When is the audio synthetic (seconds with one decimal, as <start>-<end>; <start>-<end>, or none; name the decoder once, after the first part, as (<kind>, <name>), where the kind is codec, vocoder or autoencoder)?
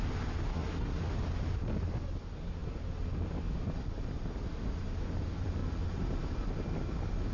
0.5-1.0 (codec, SNAC)